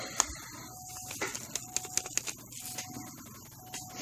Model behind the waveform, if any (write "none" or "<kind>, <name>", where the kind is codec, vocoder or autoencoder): none